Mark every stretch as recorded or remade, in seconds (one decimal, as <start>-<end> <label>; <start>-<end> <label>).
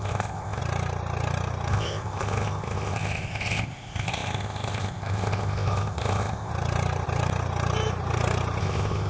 0.0-0.6 remade; 0.6-1.7 recorded; 1.7-6.5 remade; 6.5-8.6 recorded; 8.6-9.1 remade